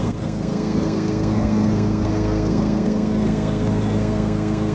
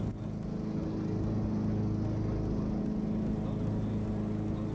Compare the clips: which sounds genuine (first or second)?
second